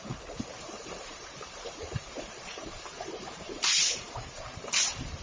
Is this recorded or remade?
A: remade